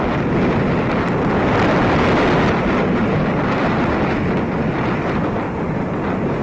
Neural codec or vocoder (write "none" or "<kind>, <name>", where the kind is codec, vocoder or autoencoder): none